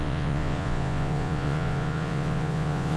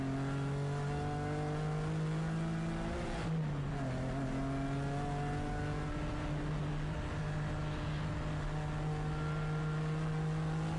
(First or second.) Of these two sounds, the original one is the second